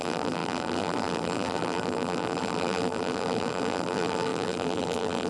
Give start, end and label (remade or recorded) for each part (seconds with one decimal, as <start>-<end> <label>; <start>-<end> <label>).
0.0-5.3 remade